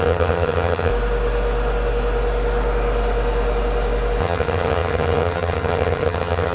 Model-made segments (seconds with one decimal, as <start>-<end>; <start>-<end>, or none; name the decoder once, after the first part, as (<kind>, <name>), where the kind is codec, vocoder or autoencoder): 0.0-0.9 (vocoder, HiFi-GAN); 4.2-6.5